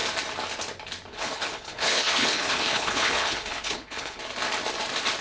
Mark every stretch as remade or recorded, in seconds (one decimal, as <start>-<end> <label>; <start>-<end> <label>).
0.0-1.1 recorded; 1.1-4.2 remade; 4.2-5.2 recorded